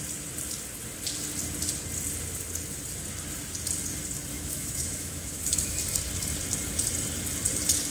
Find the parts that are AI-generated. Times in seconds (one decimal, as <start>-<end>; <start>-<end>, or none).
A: 4.3-5.8